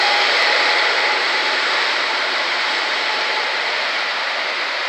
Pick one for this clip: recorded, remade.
remade